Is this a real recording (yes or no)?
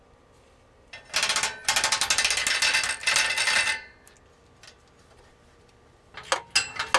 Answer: yes